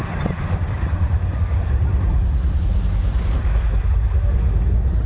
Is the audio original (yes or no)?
yes